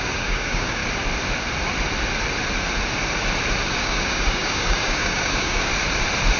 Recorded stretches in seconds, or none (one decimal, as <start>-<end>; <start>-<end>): 0.8-3.8; 5.7-6.4